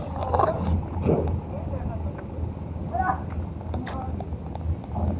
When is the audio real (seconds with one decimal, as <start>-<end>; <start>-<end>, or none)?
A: 0.0-5.2